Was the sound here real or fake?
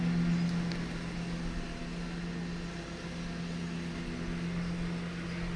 real